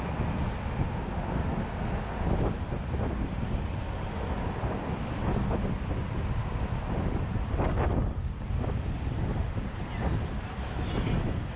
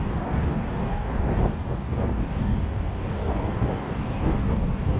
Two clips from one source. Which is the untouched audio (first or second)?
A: first